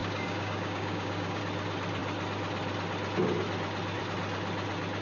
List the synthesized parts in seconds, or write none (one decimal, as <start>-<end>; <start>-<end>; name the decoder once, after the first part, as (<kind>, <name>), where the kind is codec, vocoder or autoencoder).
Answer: 0.0-1.4 (codec, DAC)

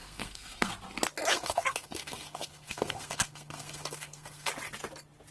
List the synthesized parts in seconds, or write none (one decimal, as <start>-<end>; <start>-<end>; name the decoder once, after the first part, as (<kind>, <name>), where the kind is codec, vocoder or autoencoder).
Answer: 0.0-0.7 (codec, SNAC); 1.3-4.5

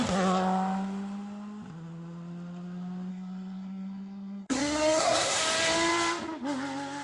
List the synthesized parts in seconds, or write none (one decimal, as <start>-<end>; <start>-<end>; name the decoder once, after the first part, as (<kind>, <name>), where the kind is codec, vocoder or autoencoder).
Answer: 3.1-5.4 (codec, SNAC)

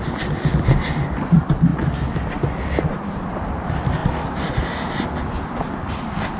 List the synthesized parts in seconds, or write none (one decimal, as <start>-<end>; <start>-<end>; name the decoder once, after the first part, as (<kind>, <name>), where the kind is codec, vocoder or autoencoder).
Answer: none

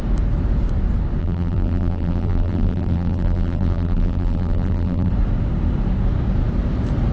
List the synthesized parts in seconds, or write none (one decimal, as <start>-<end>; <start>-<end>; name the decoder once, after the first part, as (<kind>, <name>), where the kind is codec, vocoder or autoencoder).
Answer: 1.2-5.1 (vocoder, BigVGAN v2)

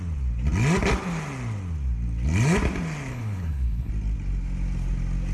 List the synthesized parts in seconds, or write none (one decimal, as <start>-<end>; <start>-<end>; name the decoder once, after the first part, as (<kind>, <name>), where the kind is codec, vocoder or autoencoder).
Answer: 3.1-3.9 (codec, HILCodec)